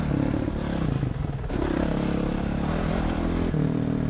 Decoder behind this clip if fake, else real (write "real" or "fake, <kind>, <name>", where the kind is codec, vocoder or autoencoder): real